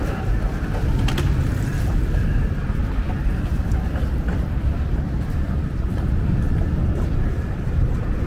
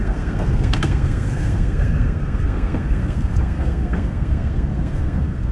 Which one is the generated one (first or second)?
second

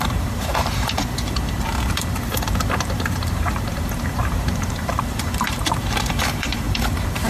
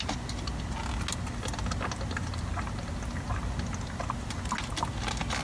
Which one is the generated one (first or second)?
first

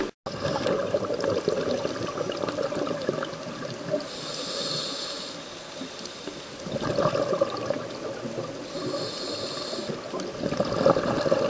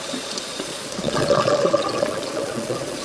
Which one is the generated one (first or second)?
second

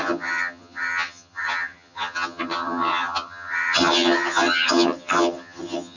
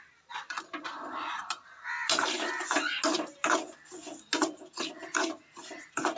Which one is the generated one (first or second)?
first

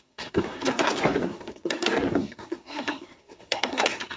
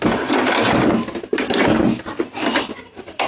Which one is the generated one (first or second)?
first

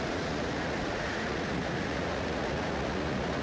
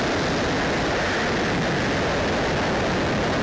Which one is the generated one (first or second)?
first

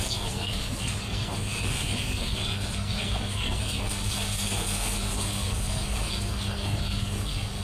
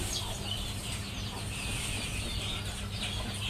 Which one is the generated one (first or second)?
first